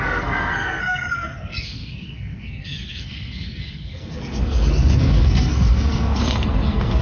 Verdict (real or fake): fake